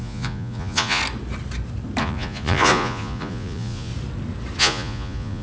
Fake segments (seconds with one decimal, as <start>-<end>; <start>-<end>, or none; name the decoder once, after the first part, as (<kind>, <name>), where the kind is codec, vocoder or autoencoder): 0.0-1.0 (vocoder, Vocos); 2.0-3.9; 4.6-5.4